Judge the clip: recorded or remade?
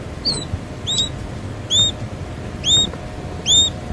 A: recorded